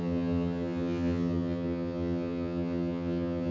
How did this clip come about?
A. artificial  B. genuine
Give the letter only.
A